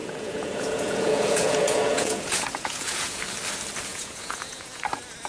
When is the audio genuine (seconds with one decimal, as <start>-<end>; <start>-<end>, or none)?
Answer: 3.2-3.9; 4.8-5.3